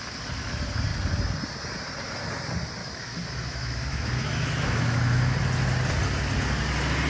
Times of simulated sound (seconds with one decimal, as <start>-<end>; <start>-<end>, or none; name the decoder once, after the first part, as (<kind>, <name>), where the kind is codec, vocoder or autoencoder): 2.8-5.4 (autoencoder, DAC-VAE)